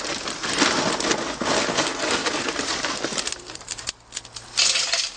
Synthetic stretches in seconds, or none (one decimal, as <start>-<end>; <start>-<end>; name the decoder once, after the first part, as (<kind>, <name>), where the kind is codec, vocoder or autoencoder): 2.2-3.9 (vocoder, BigVGAN v2)